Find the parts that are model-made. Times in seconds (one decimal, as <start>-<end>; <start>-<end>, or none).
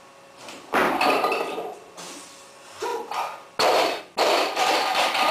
none